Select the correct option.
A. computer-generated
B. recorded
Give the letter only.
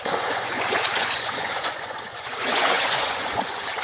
A